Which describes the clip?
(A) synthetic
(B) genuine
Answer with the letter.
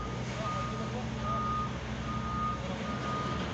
B